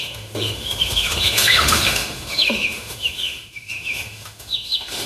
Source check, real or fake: fake